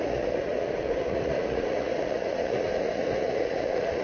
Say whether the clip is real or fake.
fake